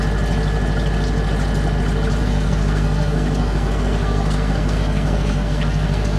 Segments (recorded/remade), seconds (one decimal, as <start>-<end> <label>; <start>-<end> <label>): 0.0-2.2 recorded; 2.2-6.2 remade